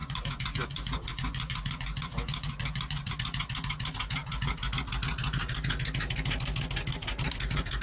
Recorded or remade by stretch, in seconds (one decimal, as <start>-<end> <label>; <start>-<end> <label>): 0.0-3.1 remade; 3.1-7.8 recorded